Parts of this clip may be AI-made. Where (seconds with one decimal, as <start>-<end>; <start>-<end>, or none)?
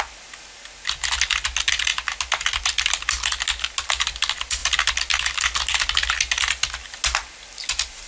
none